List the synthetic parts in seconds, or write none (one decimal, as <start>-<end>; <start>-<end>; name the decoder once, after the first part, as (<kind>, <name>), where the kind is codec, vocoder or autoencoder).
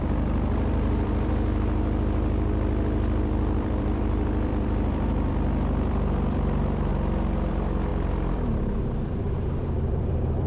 0.0-6.9 (vocoder, BigVGAN v2); 7.5-10.5